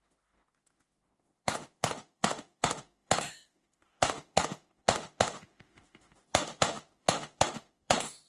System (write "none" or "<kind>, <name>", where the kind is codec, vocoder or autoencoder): autoencoder, DAC-VAE